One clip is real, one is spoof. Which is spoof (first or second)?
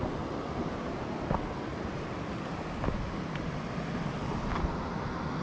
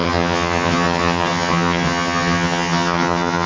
second